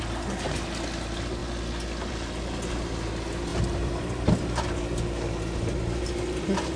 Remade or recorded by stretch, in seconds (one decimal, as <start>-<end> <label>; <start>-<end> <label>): 0.0-6.8 recorded